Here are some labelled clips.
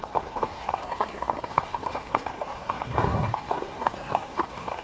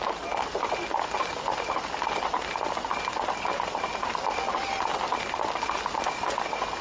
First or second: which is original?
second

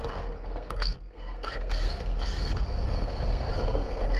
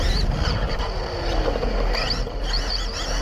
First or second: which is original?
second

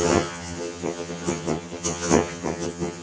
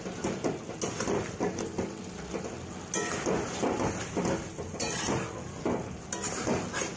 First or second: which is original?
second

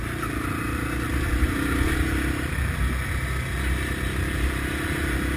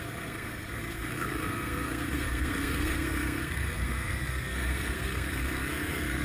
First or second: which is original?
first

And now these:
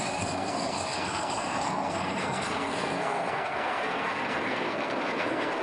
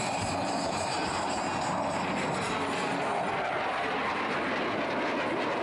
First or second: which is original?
second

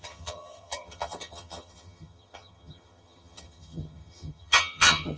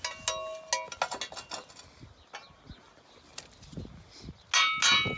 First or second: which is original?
second